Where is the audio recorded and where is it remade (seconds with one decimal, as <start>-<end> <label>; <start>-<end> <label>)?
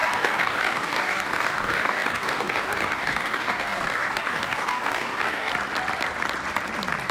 0.0-5.5 remade; 5.5-7.1 recorded